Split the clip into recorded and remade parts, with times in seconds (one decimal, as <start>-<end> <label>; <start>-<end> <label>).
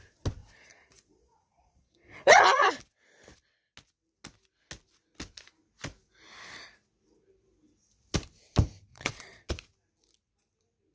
0.0-0.4 recorded; 0.4-2.7 remade; 2.7-8.9 recorded; 8.9-9.5 remade; 9.5-10.9 recorded